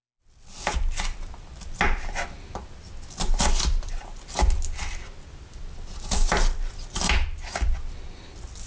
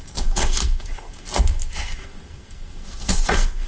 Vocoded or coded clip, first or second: second